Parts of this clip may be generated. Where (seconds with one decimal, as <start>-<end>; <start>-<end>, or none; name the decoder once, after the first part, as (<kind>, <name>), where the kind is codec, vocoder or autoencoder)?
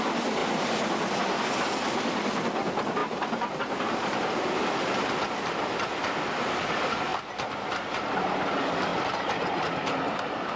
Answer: 3.0-3.5 (vocoder, BigVGAN v2); 8.9-10.2